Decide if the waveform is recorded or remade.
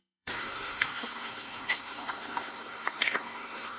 remade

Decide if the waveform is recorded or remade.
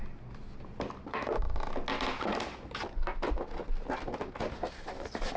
recorded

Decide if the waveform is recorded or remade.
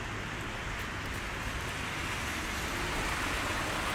recorded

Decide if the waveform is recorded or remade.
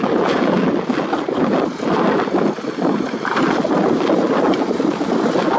recorded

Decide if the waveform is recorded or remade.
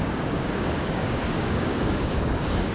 remade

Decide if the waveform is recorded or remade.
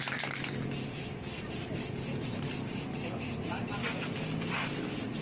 recorded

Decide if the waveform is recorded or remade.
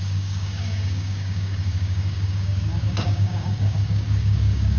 remade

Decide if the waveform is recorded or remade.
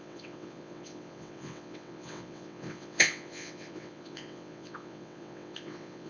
remade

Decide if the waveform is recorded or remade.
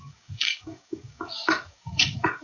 remade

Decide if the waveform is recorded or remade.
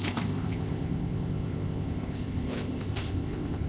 remade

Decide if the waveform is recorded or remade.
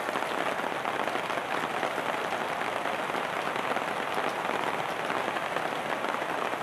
recorded